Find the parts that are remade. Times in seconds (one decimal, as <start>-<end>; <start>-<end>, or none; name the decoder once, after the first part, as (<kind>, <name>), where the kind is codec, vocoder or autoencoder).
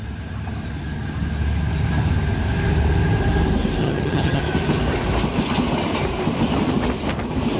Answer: 3.8-4.4 (vocoder, HiFi-GAN)